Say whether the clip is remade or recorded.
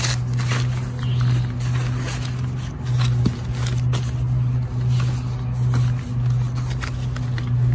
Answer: recorded